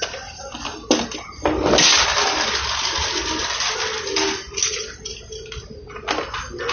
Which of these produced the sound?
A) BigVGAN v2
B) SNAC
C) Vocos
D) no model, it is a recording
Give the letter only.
D